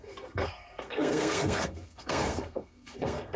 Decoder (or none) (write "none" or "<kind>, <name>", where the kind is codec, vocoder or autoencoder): codec, SNAC